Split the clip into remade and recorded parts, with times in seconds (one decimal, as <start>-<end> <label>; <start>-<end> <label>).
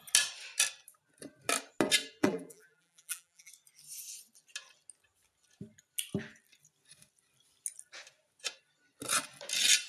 0.0-2.2 recorded; 2.2-3.5 remade; 3.5-9.9 recorded